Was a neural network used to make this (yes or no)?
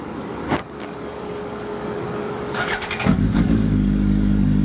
yes